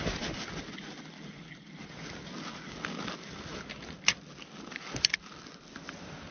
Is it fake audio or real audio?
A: real